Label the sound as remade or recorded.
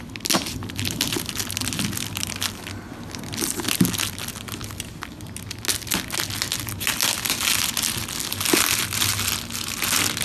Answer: recorded